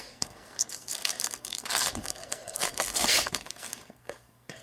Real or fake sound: fake